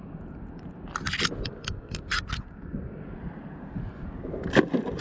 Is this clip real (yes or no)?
yes